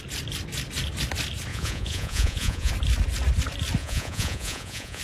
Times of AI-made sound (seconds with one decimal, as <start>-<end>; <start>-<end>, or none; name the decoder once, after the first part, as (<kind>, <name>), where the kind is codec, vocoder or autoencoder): 1.5-2.7 (vocoder, Vocos); 3.8-5.0